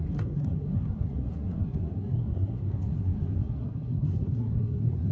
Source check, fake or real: fake